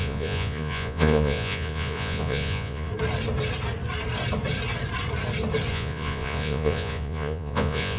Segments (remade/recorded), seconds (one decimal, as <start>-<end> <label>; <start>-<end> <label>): 0.0-2.9 remade; 2.9-5.7 recorded; 5.7-8.0 remade